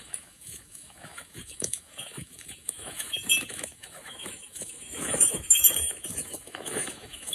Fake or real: fake